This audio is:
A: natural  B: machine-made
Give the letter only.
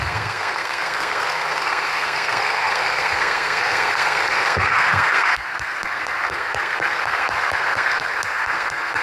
B